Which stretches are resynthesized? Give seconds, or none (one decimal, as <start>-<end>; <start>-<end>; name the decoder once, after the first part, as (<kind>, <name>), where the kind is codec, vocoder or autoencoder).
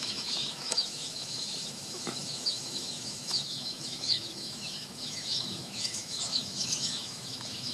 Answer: 0.0-7.7 (autoencoder, DAC-VAE)